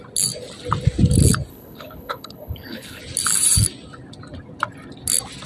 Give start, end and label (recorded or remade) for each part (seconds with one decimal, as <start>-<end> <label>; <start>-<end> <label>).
0.0-1.5 recorded; 1.5-3.0 remade; 3.0-5.5 recorded